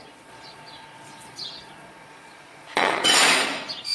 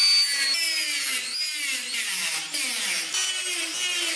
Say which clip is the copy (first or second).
first